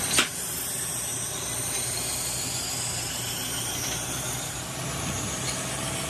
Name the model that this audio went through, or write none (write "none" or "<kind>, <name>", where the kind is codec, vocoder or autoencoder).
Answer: none